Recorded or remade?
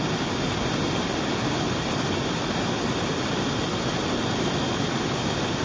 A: recorded